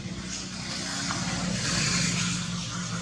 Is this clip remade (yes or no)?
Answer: no